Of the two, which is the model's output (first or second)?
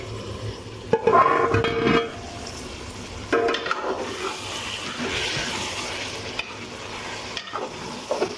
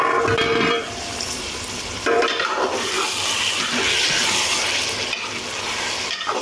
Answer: second